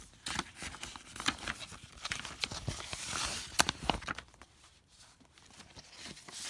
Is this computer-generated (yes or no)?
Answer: no